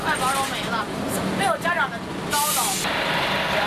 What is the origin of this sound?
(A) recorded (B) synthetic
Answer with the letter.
A